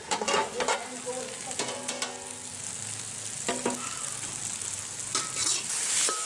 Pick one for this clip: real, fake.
real